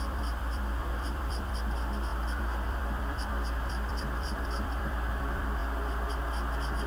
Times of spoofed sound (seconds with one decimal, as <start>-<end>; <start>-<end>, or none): 0.0-5.6